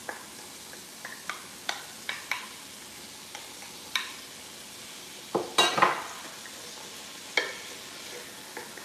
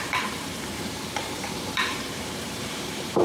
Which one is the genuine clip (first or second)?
first